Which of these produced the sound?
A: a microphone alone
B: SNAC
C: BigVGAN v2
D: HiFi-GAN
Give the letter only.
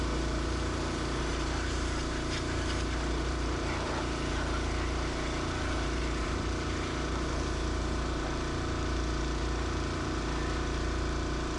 C